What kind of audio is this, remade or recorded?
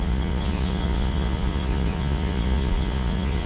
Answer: remade